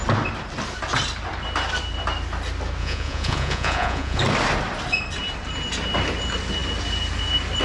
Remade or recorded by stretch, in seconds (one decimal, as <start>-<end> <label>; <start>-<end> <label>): 0.0-2.8 recorded; 2.8-4.2 remade; 4.2-7.6 recorded